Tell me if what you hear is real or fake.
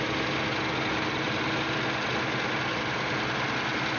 real